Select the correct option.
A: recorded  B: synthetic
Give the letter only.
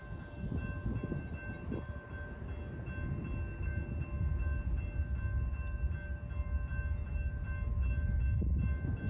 A